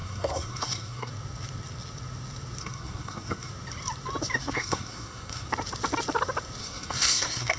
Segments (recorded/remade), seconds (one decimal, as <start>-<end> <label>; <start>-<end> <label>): 0.0-1.1 remade; 1.1-2.6 recorded; 2.6-3.5 remade; 3.5-4.4 recorded; 4.4-5.5 remade; 5.5-6.6 recorded; 6.6-7.6 remade